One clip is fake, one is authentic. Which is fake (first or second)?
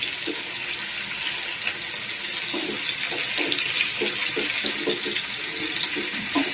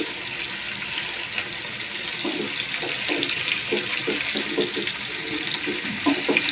second